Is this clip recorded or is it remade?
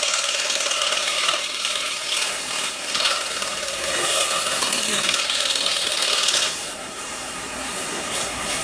remade